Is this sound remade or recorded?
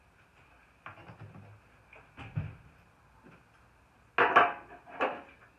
recorded